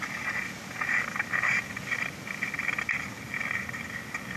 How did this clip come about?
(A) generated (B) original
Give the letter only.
B